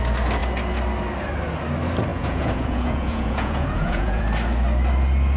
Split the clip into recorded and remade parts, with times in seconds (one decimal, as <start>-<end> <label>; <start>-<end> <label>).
0.0-2.1 recorded; 2.1-4.2 remade; 4.2-5.4 recorded

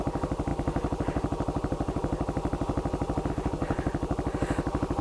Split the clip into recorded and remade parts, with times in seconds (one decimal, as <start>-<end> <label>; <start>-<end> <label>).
0.0-5.0 recorded

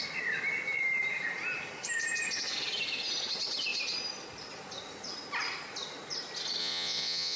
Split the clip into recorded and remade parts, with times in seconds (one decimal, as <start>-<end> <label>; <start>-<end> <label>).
0.0-6.6 recorded; 6.6-7.4 remade